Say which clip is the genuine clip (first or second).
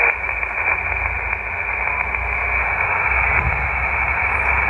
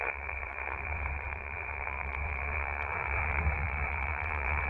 first